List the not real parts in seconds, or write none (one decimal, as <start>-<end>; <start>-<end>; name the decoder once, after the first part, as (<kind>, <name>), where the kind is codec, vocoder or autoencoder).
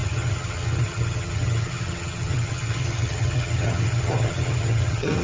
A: 0.0-5.2 (vocoder, HiFi-GAN)